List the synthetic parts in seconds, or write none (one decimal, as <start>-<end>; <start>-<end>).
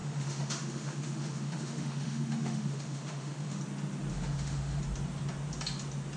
0.0-3.6; 4.1-4.8